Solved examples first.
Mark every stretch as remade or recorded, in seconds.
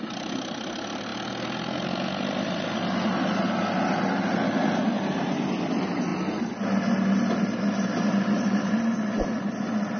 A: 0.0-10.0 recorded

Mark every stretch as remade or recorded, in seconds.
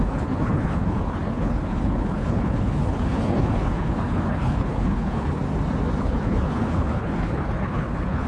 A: 0.0-5.4 remade; 5.4-6.0 recorded; 6.0-8.3 remade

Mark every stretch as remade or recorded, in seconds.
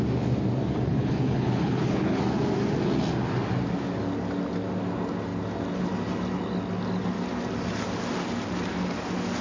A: 0.0-0.9 recorded; 0.9-2.2 remade; 2.2-9.4 recorded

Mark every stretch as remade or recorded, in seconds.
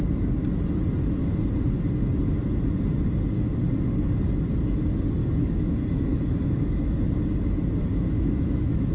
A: 0.0-5.2 recorded; 5.2-7.1 remade; 7.1-7.9 recorded; 7.9-8.9 remade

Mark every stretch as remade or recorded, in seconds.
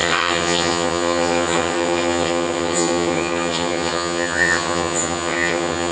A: 0.0-5.9 remade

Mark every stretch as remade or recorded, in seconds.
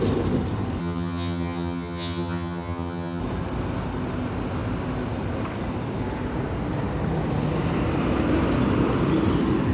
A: 0.0-0.8 recorded; 0.8-3.2 remade; 3.2-9.7 recorded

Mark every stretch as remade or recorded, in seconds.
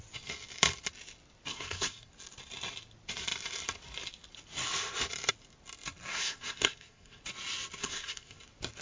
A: 0.0-1.5 recorded; 1.5-2.1 remade; 2.1-6.1 recorded; 6.1-7.2 remade; 7.2-7.8 recorded; 7.8-8.4 remade; 8.4-8.8 recorded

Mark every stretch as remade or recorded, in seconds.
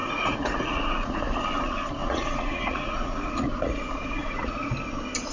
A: 0.0-1.2 remade; 1.2-2.0 recorded; 2.0-4.7 remade; 4.7-5.3 recorded